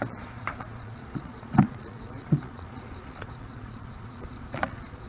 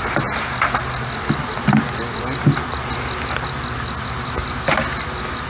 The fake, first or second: first